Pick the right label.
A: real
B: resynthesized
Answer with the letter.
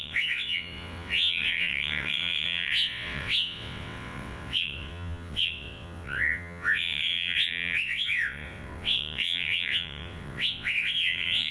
B